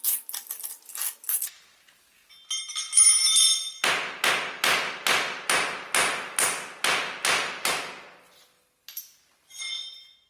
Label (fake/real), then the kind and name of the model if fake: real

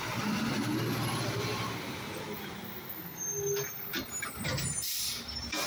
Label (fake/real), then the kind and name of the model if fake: fake, vocoder, BigVGAN v2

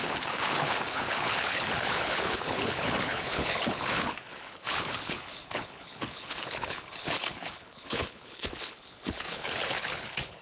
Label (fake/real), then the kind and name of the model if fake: fake, codec, HILCodec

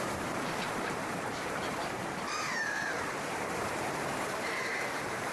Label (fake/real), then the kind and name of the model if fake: fake, vocoder, BigVGAN v2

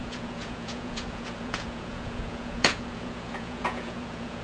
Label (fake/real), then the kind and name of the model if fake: fake, vocoder, Vocos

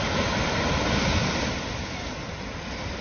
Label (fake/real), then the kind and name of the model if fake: real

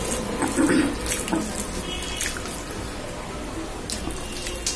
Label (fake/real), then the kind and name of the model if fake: real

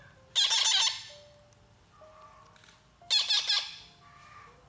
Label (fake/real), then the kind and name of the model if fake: real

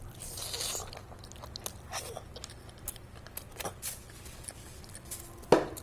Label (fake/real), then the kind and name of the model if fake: real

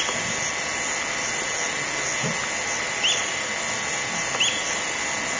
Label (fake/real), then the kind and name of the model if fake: real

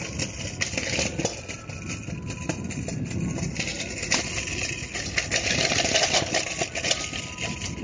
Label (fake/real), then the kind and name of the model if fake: real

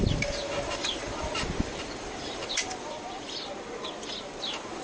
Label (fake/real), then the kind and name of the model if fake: fake, vocoder, BigVGAN v2